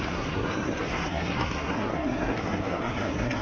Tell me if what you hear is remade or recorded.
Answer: remade